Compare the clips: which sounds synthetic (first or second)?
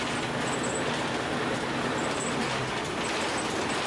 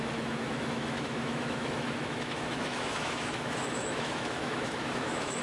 second